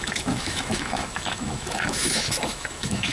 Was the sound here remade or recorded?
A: remade